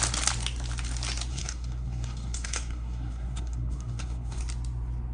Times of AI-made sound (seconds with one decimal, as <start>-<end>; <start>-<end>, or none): 1.3-4.4